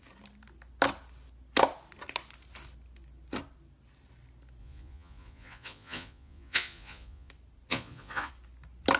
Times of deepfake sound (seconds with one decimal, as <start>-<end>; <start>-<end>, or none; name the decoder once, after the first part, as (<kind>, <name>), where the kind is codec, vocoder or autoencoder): 4.6-7.3 (vocoder, Vocos); 7.7-8.3